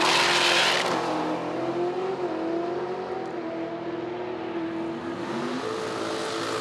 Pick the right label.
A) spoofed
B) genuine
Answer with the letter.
B